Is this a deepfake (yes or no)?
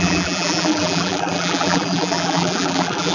yes